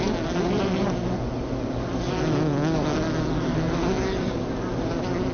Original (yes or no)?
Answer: yes